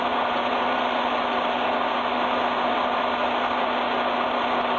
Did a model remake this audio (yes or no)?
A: no